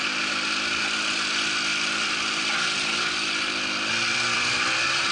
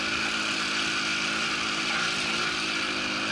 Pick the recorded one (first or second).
second